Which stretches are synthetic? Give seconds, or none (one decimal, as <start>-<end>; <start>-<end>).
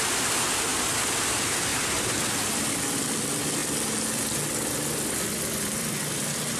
none